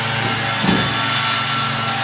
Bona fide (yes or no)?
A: yes